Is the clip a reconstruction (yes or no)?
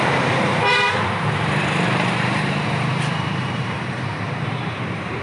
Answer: yes